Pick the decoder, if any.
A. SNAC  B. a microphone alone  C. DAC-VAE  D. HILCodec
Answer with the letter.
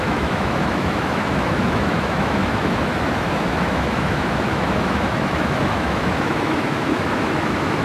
C